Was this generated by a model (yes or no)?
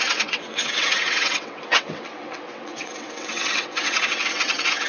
yes